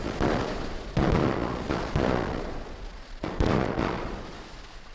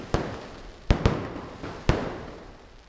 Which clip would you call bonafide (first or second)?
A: second